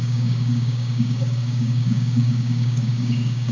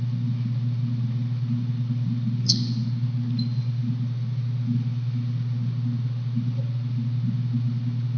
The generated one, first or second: first